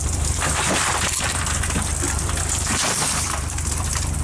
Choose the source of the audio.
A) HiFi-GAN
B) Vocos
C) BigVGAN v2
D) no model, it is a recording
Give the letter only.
D